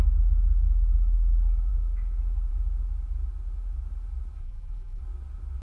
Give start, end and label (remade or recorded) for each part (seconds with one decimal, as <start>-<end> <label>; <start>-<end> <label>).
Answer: 0.0-4.4 recorded; 4.4-5.0 remade; 5.0-5.6 recorded